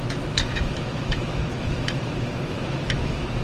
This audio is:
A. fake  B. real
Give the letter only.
A